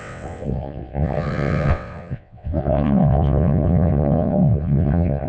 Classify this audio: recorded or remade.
remade